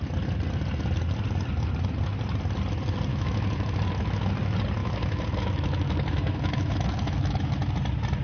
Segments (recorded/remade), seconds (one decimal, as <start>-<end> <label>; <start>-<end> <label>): 0.0-3.1 recorded; 3.1-4.3 remade; 4.3-4.8 recorded; 4.8-7.7 remade; 7.7-8.2 recorded